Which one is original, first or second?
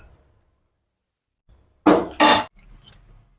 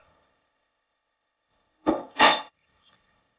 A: first